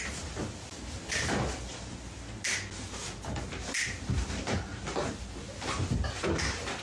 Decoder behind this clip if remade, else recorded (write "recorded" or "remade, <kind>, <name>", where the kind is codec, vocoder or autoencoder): recorded